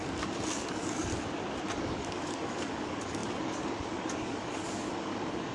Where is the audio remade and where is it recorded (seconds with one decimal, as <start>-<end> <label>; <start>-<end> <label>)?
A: 0.0-1.1 remade; 1.1-1.6 recorded; 1.6-5.5 remade